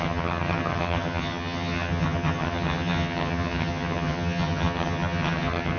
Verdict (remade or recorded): remade